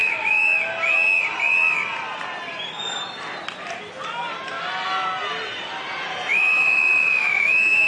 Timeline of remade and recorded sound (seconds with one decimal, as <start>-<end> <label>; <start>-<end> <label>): 0.0-0.7 remade; 0.7-6.3 recorded; 6.3-7.9 remade